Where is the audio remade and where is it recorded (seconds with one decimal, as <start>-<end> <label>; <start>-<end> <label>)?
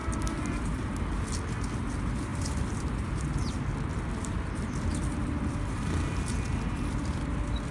0.0-1.3 remade; 1.3-2.3 recorded; 2.3-2.9 remade; 2.9-4.9 recorded; 4.9-7.1 remade; 7.1-7.7 recorded